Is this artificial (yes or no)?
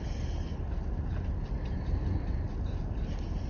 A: no